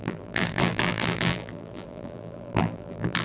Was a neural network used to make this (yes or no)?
yes